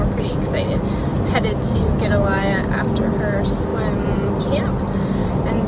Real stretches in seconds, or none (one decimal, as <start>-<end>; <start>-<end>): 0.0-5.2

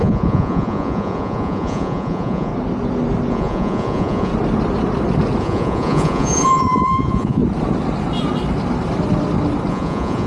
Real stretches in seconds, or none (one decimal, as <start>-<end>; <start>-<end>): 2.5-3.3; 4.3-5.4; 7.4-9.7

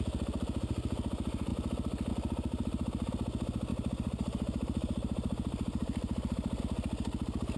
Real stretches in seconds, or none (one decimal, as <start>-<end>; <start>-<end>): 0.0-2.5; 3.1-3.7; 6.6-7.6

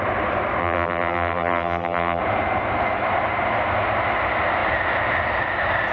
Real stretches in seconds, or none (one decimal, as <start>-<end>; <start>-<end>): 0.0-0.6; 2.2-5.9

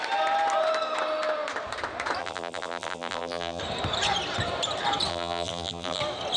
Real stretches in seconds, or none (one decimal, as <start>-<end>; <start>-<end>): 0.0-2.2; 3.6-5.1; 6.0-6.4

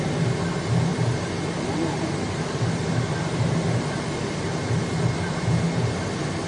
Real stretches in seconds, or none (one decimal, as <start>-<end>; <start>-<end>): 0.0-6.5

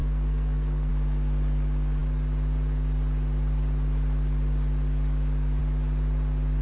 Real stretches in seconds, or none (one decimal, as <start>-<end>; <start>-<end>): 0.9-6.6